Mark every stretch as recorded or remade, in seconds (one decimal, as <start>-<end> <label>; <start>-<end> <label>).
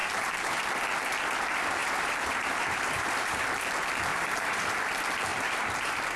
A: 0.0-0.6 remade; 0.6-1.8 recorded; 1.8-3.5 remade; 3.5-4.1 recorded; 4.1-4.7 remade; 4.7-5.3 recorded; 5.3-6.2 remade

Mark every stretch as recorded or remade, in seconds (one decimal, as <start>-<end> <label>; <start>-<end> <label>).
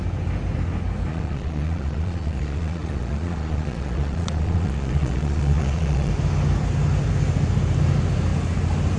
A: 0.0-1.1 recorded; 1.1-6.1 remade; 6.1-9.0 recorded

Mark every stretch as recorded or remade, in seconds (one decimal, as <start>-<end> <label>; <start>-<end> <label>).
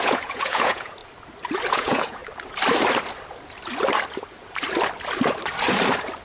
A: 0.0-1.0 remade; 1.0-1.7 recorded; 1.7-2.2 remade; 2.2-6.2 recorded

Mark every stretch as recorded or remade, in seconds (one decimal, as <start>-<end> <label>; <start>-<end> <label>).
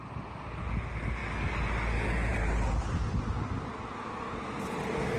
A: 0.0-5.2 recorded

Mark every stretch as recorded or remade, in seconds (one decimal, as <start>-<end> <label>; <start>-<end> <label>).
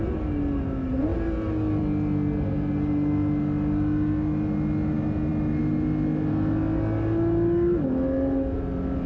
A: 0.0-9.1 recorded